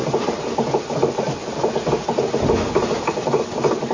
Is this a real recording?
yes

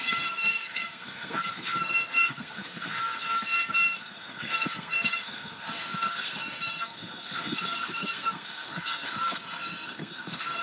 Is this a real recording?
no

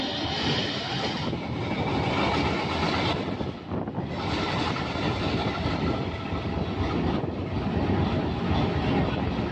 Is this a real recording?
yes